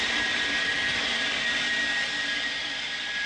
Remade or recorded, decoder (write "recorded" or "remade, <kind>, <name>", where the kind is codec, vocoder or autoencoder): remade, vocoder, BigVGAN v2